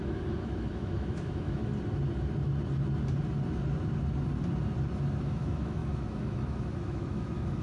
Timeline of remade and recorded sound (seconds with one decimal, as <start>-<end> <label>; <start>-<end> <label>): 0.0-1.7 remade; 1.7-5.2 recorded; 5.2-7.6 remade